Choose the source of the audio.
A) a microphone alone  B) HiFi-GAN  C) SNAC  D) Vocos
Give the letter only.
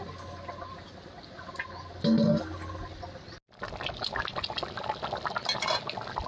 A